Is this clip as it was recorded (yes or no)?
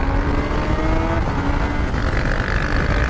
yes